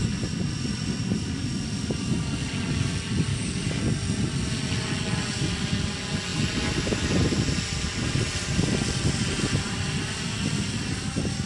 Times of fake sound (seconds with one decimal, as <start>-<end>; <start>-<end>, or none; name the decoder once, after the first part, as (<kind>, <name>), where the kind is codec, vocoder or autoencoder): 3.3-3.8 (codec, DAC)